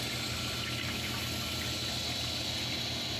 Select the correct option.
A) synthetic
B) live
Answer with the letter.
B